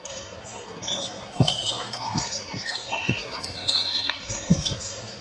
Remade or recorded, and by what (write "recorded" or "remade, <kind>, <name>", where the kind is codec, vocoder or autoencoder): remade, codec, SNAC